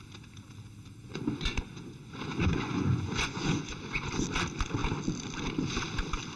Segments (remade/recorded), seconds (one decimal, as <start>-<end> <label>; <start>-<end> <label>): 0.0-1.0 recorded; 1.0-4.1 remade; 4.1-6.4 recorded